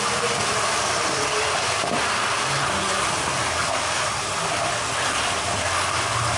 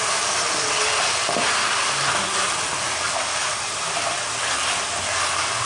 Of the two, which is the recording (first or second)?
second